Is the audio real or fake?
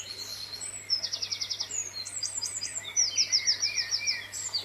real